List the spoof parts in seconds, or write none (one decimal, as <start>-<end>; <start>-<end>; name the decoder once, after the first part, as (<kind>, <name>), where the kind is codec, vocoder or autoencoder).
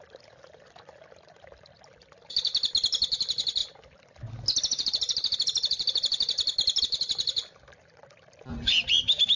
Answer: none